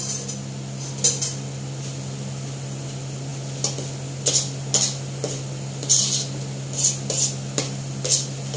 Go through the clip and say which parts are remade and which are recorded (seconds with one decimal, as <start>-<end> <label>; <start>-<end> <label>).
0.0-8.6 recorded